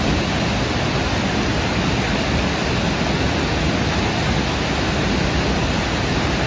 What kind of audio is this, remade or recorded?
recorded